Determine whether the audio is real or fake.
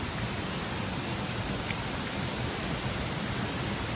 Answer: real